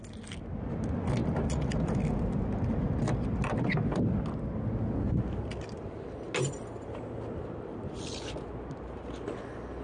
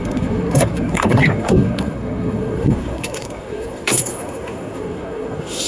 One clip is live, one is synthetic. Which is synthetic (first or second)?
second